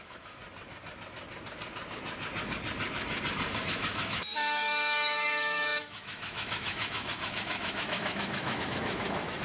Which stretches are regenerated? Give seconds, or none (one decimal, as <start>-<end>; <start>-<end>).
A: 0.0-0.4; 3.6-9.4